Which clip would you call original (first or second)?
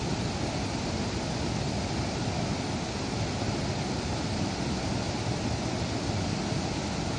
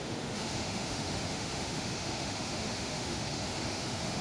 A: first